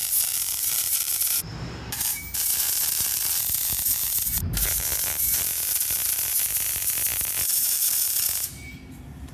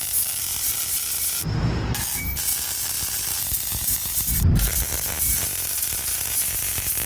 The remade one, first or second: first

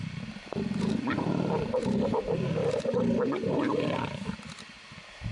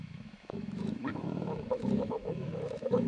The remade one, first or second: second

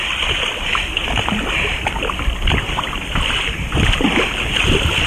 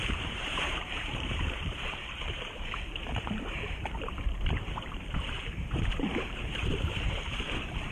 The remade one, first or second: second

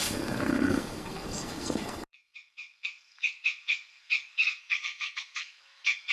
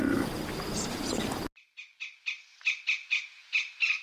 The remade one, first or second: first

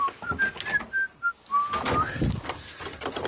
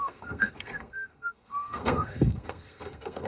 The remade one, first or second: second